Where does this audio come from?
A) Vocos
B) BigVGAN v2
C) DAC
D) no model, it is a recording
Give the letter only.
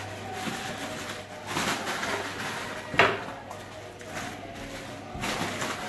D